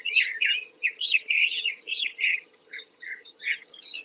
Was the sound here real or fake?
fake